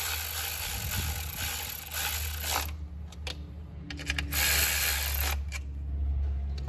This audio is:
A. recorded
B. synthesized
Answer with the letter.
A